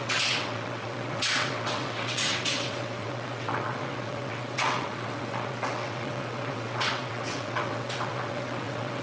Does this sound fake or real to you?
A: fake